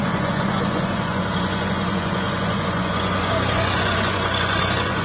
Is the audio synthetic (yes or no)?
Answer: yes